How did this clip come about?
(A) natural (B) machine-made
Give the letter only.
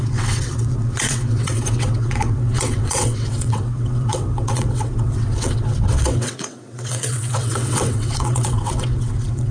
B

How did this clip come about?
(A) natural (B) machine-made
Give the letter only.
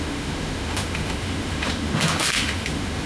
B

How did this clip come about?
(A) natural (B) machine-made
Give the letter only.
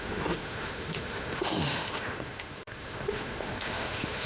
B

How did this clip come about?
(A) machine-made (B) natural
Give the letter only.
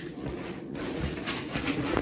A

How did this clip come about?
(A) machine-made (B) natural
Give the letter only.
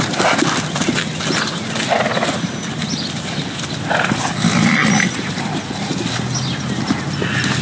B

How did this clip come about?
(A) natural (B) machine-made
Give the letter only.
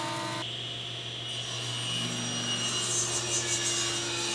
A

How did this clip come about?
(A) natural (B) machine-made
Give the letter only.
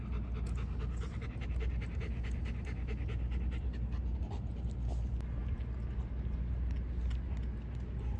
A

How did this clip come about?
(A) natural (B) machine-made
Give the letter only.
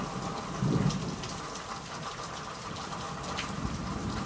A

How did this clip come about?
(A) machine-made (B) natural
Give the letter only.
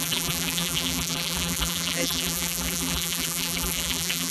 A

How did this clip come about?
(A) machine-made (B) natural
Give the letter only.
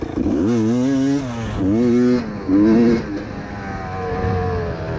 B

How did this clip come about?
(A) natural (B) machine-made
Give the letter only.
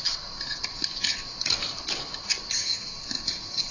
A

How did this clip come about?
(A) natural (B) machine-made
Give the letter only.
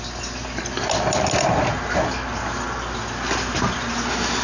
A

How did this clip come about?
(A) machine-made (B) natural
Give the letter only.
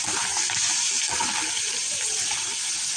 B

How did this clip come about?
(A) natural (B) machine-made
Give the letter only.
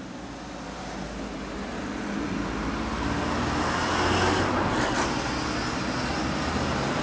A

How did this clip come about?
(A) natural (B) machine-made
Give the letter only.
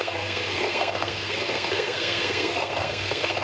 B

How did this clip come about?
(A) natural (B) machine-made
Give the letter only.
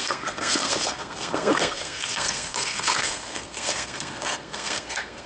B